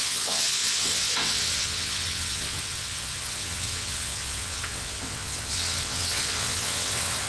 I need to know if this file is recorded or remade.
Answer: remade